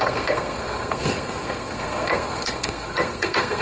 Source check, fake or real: fake